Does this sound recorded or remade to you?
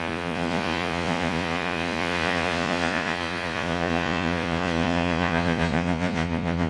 remade